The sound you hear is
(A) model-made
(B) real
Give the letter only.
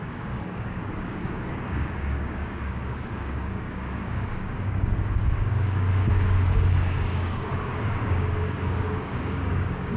A